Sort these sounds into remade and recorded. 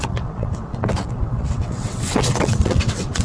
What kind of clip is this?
remade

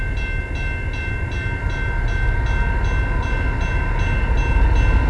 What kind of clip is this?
recorded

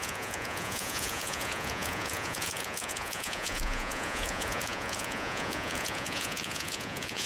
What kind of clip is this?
remade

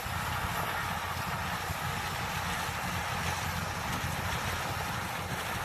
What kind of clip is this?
recorded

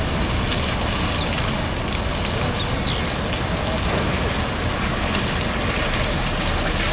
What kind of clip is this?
recorded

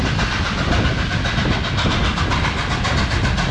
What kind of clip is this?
recorded